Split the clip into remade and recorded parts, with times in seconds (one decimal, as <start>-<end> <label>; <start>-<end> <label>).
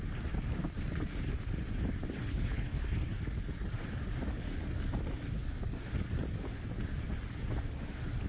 0.0-2.2 recorded; 2.2-2.8 remade; 2.8-8.3 recorded